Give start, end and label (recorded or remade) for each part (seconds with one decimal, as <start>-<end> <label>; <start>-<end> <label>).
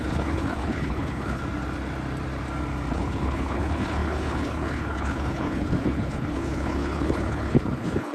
0.0-1.4 remade; 1.4-2.9 recorded; 2.9-8.1 remade